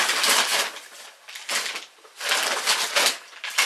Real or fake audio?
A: real